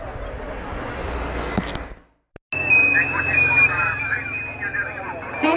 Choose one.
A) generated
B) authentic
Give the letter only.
B